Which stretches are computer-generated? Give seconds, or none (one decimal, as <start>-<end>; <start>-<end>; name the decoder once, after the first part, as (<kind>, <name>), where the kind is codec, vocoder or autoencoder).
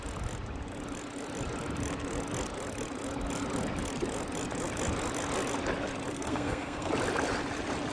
6.1-6.9 (codec, SNAC)